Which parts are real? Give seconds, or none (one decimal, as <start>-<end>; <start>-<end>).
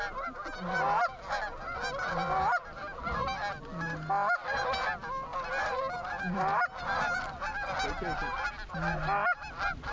0.0-9.9